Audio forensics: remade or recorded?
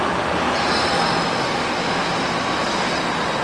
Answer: recorded